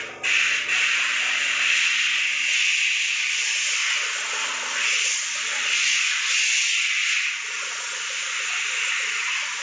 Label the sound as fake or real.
real